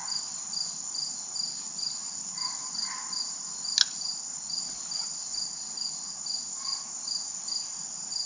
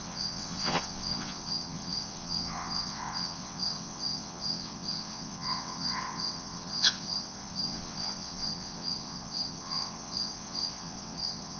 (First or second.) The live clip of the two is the first